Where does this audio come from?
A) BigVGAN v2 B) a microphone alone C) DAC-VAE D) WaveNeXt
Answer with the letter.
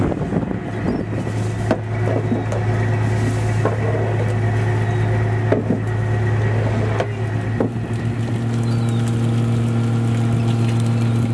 B